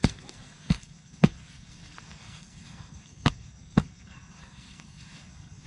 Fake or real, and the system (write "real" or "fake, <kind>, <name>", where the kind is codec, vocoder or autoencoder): fake, codec, SNAC